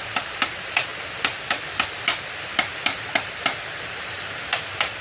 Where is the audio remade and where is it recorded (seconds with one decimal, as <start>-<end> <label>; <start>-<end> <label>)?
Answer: 0.0-5.0 recorded